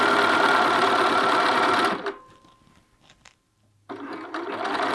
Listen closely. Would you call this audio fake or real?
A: real